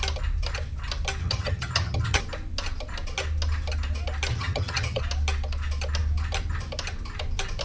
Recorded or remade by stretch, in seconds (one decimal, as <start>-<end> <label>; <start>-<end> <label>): 0.0-1.2 recorded; 1.2-2.2 remade; 2.2-4.3 recorded; 4.3-5.0 remade; 5.0-7.6 recorded